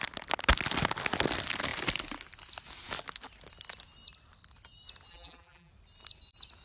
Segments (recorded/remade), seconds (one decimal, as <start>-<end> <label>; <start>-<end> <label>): 0.0-5.1 recorded; 5.1-5.7 remade; 5.7-6.6 recorded